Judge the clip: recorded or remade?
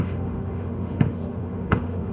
remade